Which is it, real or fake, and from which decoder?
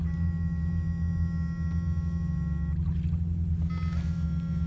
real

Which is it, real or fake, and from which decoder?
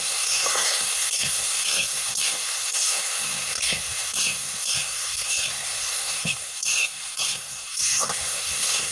fake, codec, SNAC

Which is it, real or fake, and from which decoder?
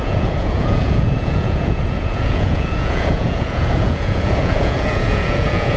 fake, vocoder, Vocos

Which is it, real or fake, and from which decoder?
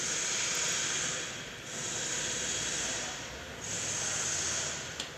real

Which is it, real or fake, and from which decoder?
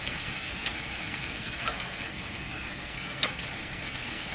fake, codec, SNAC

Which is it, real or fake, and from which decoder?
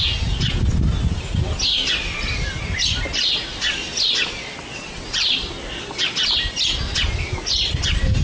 real